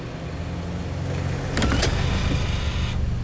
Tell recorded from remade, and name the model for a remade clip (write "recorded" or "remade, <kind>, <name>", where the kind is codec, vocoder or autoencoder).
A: recorded